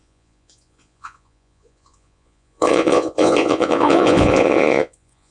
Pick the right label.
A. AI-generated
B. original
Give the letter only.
A